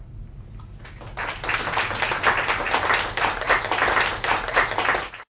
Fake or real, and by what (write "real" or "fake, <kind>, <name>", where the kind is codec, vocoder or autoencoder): real